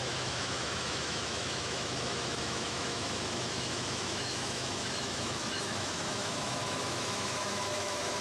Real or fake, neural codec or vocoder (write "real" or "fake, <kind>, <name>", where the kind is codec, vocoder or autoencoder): fake, autoencoder, DAC-VAE